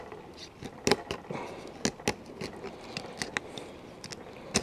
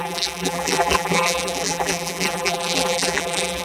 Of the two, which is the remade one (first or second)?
second